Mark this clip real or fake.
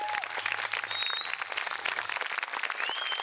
real